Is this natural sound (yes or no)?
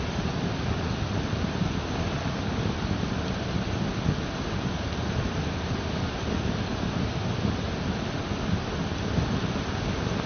yes